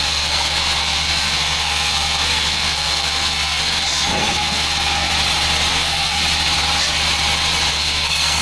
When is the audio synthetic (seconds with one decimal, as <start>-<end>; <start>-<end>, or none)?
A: 0.0-5.1; 5.7-6.2; 7.7-8.4